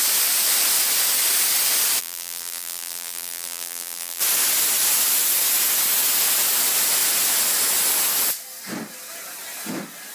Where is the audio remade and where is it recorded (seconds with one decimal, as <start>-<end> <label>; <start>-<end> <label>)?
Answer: 0.0-2.0 recorded; 2.0-4.2 remade; 4.2-10.1 recorded